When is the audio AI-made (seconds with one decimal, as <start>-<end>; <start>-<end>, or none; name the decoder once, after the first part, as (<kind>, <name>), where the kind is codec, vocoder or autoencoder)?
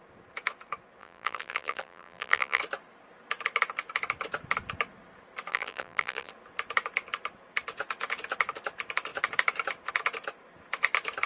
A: 1.0-2.6 (vocoder, BigVGAN v2); 5.5-6.3